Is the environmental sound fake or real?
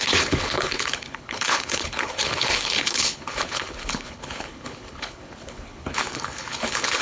fake